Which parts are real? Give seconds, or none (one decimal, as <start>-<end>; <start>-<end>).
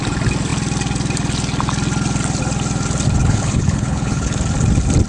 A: 0.0-3.2; 4.3-5.1